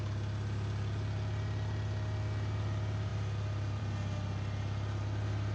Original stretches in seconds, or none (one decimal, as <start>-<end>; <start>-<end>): 0.0-5.5